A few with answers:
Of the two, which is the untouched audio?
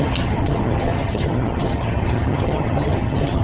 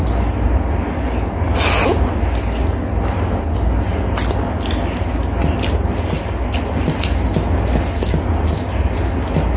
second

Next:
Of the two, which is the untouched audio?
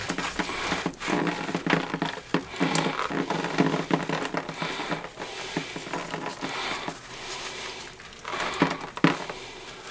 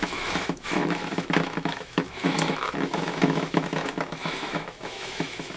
first